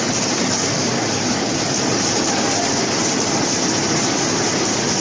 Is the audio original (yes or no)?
yes